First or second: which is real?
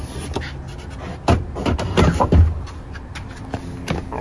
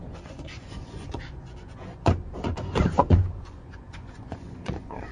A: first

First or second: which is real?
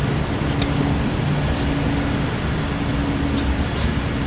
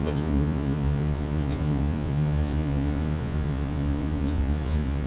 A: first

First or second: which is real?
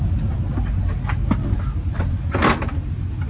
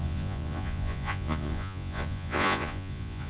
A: first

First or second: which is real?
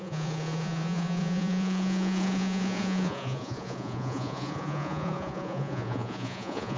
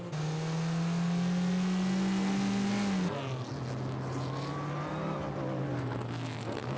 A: second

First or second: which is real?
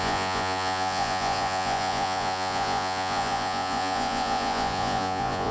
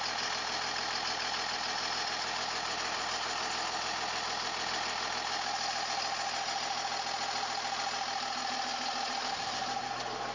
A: second